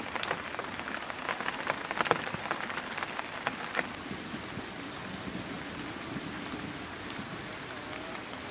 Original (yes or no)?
yes